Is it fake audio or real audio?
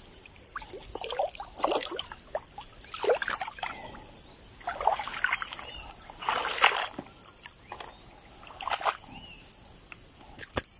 real